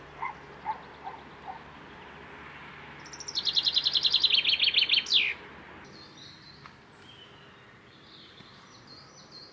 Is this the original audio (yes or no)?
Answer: yes